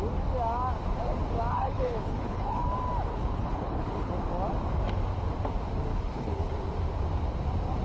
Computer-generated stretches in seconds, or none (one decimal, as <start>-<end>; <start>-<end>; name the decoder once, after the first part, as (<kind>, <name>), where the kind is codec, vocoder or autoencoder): 1.5-2.6 (codec, HILCodec); 3.1-4.1; 5.9-6.5